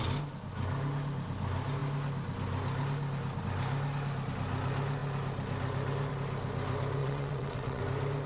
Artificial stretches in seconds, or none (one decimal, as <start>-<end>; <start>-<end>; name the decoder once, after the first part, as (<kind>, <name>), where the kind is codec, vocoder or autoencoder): 7.0-7.8 (vocoder, WaveNeXt)